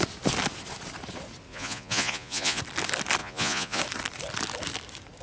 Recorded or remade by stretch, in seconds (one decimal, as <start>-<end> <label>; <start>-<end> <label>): 0.0-1.5 recorded; 1.5-2.6 remade; 2.6-3.2 recorded; 3.2-3.8 remade; 3.8-5.2 recorded

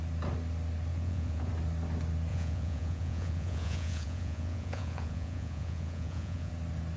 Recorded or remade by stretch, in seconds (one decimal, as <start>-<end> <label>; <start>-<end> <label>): 0.0-0.9 recorded; 0.9-1.5 remade; 1.5-2.3 recorded; 2.3-6.5 remade; 6.5-7.0 recorded